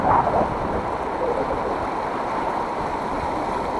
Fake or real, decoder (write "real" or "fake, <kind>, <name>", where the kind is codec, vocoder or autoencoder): real